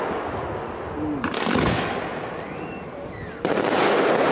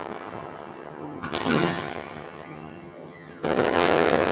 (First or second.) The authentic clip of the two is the first